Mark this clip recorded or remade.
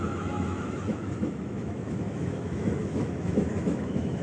remade